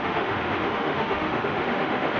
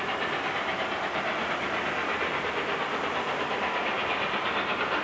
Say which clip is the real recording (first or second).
second